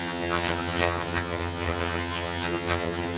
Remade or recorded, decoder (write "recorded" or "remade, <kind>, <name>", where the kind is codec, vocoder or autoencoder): remade, vocoder, HiFi-GAN